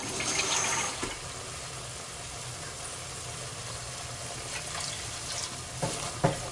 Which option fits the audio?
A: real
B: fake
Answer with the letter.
A